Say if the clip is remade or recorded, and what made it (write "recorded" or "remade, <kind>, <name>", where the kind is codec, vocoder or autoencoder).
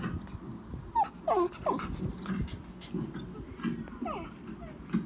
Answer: recorded